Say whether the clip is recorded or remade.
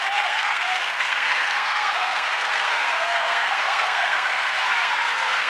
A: remade